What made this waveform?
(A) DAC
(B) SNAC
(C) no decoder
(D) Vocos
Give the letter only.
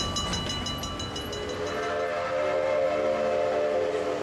C